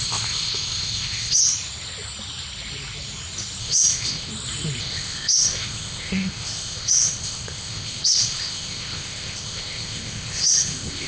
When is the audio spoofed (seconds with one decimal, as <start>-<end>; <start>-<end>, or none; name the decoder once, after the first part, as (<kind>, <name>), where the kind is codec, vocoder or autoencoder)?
0.0-1.4 (codec, ZipCodec); 3.6-4.3; 4.8-11.1